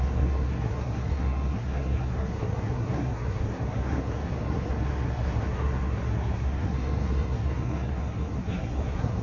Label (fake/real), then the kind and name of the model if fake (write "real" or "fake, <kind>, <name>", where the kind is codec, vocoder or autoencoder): fake, codec, SNAC